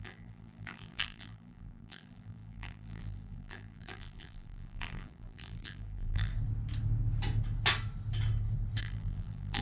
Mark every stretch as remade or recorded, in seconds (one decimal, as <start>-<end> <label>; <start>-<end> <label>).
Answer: 0.0-6.3 remade; 6.3-8.8 recorded; 8.8-9.6 remade